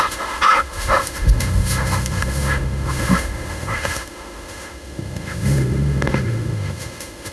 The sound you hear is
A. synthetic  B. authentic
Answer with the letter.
A